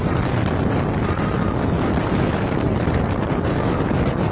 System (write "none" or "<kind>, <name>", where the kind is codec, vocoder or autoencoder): none